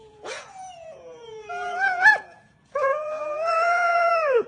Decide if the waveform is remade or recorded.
remade